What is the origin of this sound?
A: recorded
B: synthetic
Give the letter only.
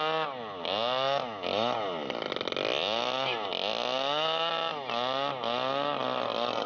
A